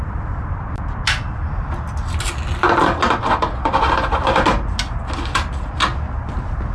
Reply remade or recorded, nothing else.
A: recorded